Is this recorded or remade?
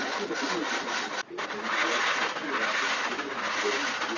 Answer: recorded